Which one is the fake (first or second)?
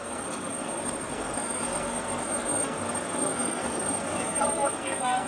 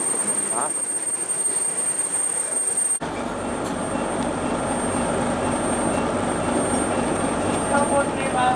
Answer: first